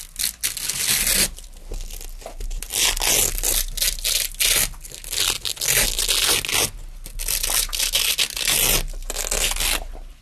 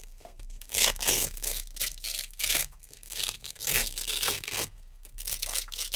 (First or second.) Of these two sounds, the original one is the first